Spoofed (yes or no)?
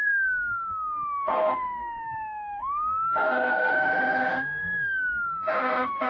yes